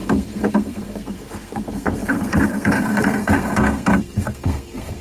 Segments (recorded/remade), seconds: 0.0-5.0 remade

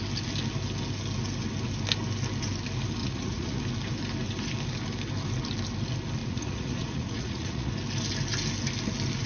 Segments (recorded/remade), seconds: 0.0-3.0 recorded; 3.0-3.6 remade; 3.6-6.2 recorded; 6.2-7.7 remade; 7.7-9.3 recorded

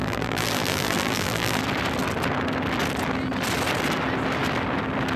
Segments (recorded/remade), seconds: 0.0-1.6 remade; 1.6-5.2 recorded